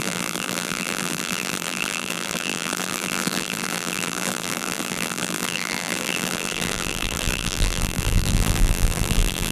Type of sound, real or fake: fake